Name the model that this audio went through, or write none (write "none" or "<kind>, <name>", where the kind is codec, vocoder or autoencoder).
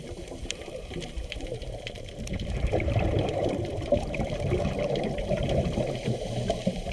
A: vocoder, BigVGAN v2